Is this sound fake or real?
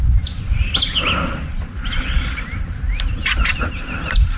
real